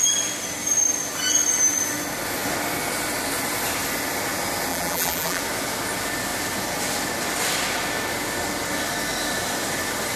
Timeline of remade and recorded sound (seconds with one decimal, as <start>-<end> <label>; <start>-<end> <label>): 0.0-4.7 recorded; 4.7-5.4 remade; 5.4-10.2 recorded